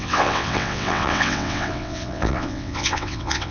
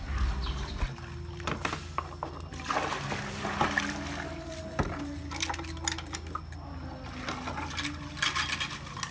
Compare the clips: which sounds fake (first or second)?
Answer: first